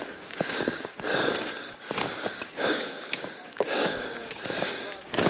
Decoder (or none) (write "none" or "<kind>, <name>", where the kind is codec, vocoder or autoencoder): codec, DAC